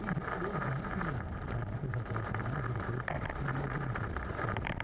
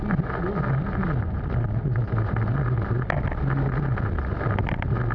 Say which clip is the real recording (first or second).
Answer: second